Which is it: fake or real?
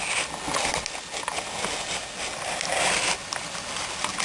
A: real